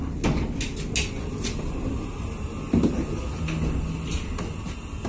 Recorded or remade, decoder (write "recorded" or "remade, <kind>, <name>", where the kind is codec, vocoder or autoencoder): recorded